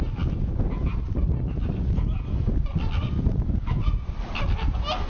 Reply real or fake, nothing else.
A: real